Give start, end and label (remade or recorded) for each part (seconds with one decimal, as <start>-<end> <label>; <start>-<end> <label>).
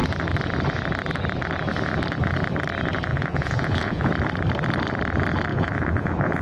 0.0-3.1 recorded; 3.1-4.1 remade; 4.1-5.5 recorded; 5.5-6.4 remade